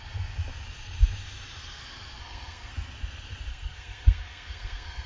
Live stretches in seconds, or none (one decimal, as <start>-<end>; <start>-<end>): 0.0-2.2; 2.7-3.5